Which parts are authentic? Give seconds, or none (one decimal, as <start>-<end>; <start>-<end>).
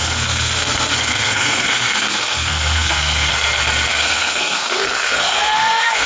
3.3-3.9